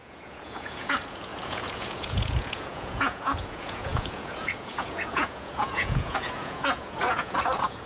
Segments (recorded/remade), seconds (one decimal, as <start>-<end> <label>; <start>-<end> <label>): 0.0-7.9 remade